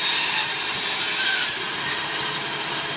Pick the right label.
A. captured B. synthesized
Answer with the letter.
B